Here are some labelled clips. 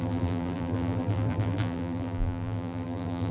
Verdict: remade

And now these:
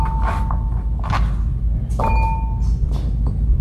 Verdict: recorded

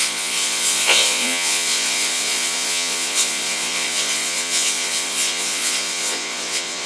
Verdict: remade